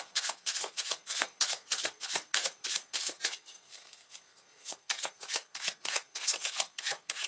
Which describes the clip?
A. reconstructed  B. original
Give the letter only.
A